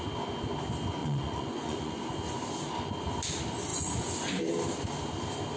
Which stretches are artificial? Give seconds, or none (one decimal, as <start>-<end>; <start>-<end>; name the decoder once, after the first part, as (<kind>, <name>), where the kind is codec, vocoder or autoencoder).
1.0-2.1 (vocoder, Vocos); 3.7-4.4